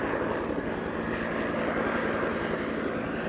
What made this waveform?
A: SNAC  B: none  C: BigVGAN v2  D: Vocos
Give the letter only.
B